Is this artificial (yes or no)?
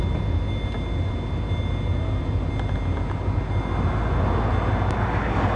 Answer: no